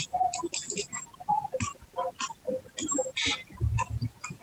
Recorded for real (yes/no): yes